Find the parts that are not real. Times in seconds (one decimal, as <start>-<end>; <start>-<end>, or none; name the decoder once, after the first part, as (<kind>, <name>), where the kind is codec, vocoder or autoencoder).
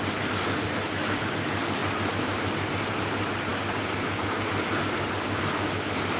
none